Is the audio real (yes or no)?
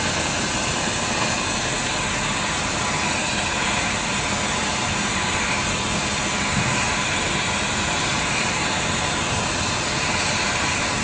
yes